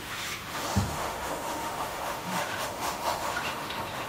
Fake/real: fake